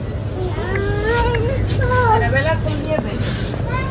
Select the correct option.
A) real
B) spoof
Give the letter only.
A